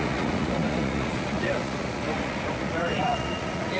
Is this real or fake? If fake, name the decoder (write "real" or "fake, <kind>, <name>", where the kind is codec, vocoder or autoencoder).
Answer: fake, vocoder, Vocos